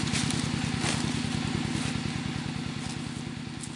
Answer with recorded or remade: recorded